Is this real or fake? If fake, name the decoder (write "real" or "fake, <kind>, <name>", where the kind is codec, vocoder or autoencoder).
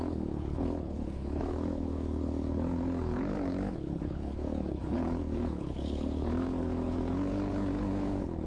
fake, codec, HILCodec